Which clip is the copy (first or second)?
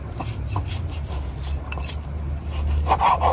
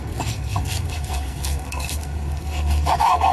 second